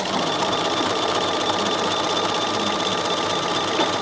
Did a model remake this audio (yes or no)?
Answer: no